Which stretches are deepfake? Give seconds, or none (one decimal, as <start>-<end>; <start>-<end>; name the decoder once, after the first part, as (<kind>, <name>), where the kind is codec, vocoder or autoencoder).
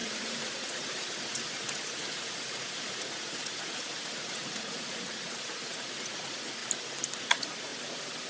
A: 0.0-6.6 (vocoder, Vocos); 7.2-7.7